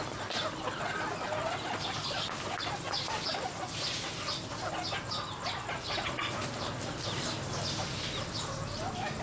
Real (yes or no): yes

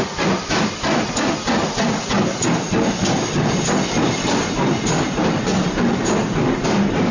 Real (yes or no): yes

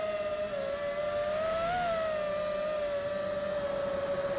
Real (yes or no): yes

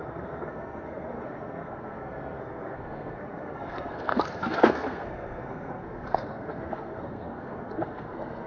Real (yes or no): no